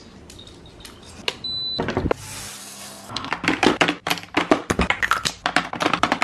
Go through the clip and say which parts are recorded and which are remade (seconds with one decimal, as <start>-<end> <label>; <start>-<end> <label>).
0.0-2.6 recorded; 2.6-3.3 remade; 3.3-6.2 recorded